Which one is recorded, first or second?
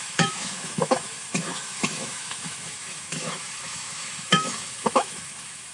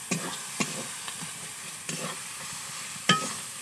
second